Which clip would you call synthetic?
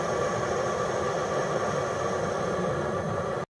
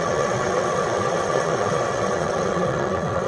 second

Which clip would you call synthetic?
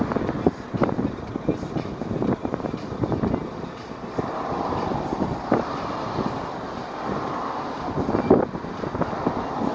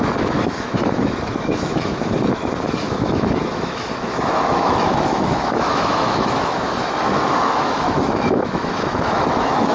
second